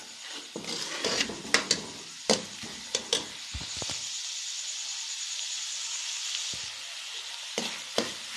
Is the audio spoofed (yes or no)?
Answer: no